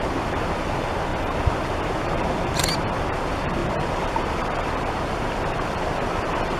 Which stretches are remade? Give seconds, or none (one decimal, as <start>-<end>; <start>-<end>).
0.0-1.1; 1.8-2.6; 3.1-6.6